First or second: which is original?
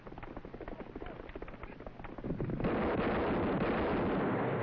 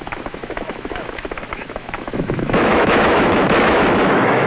first